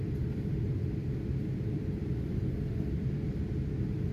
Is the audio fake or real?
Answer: real